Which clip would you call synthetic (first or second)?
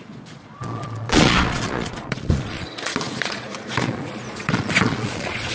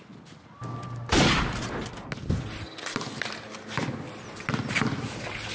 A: first